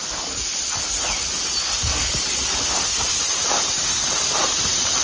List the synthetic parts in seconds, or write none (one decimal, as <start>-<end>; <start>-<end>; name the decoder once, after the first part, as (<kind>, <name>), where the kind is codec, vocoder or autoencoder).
1.6-2.0 (codec, SNAC)